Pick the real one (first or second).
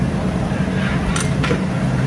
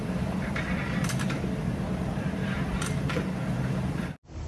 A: first